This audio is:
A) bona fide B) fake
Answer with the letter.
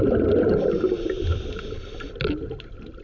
A